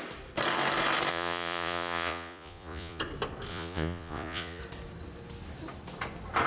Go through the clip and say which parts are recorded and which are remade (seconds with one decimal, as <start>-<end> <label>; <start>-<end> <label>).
0.0-1.1 recorded; 1.1-3.0 remade; 3.0-3.5 recorded; 3.5-4.6 remade; 4.6-6.5 recorded

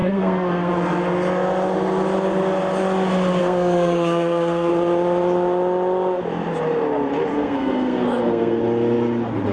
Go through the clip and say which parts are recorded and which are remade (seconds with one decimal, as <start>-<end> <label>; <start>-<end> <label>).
0.0-0.7 remade; 0.7-3.4 recorded; 3.4-4.7 remade; 4.7-7.3 recorded; 7.3-8.6 remade; 8.6-9.5 recorded

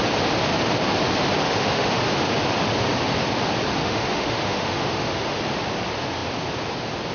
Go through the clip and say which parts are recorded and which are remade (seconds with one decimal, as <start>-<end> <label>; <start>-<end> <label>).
0.0-1.4 recorded; 1.4-2.0 remade; 2.0-3.8 recorded; 3.8-5.4 remade; 5.4-7.1 recorded

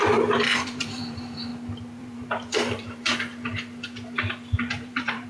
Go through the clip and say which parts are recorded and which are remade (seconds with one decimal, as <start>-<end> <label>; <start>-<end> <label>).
0.0-1.5 remade; 1.5-2.0 recorded; 2.0-3.1 remade; 3.1-4.7 recorded; 4.7-5.3 remade

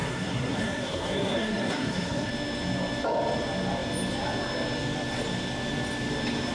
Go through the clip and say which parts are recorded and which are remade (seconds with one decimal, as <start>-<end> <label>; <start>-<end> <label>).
0.0-2.3 remade; 2.3-6.5 recorded

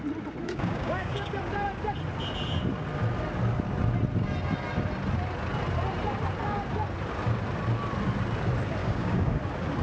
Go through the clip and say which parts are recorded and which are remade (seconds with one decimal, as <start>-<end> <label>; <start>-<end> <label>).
0.0-0.4 recorded; 0.4-1.3 remade; 1.3-8.8 recorded; 8.8-9.4 remade; 9.4-9.8 recorded

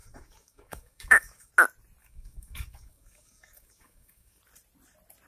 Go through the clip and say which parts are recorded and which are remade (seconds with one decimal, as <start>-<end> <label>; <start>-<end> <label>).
0.0-1.5 remade; 1.5-2.0 recorded; 2.0-4.4 remade; 4.4-5.3 recorded